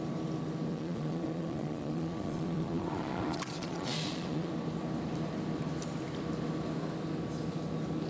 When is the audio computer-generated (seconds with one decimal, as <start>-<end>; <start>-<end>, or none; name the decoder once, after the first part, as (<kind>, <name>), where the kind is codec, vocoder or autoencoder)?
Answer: 0.7-4.5 (vocoder, Vocos)